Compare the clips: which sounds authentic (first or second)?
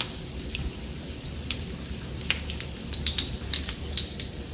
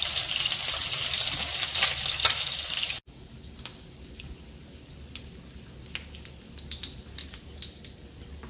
second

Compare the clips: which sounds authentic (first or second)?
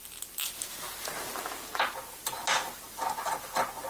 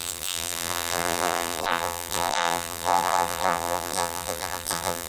first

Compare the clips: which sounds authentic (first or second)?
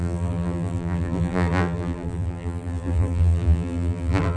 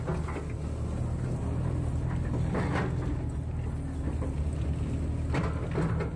second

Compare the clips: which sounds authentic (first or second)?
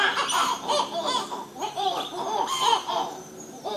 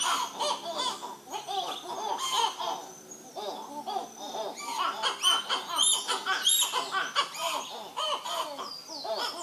second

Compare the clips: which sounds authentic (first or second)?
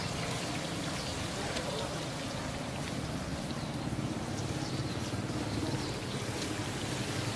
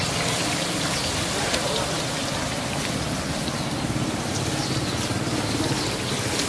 first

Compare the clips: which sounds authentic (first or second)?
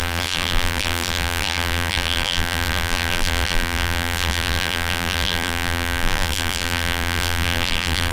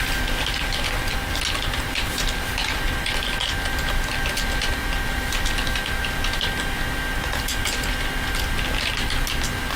second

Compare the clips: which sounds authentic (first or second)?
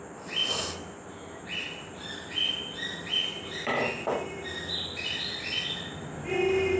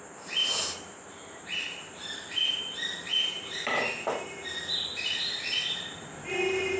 first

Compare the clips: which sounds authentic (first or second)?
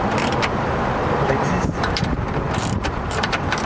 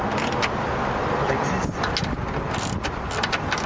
second